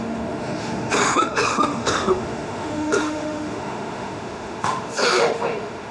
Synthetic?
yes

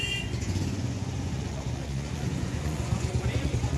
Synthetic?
yes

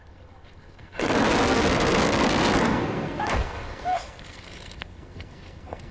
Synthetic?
yes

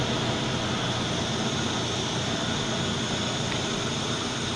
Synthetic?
no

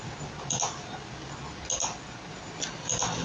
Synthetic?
no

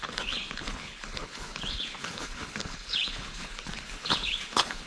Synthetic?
yes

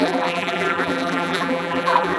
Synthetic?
yes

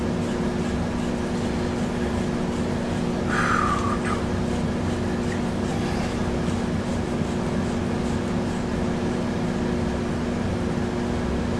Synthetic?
no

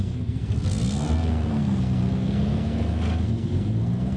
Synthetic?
yes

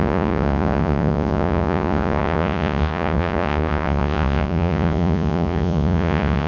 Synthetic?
yes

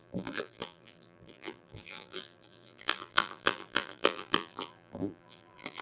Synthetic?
yes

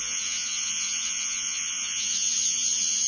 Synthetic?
yes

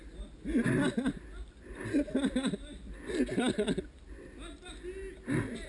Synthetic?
no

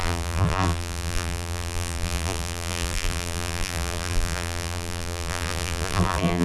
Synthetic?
yes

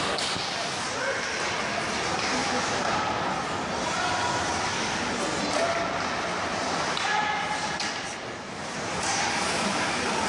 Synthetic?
no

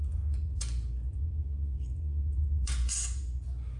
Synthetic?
yes